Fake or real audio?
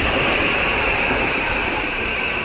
fake